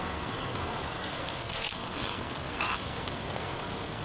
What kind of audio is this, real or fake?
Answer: fake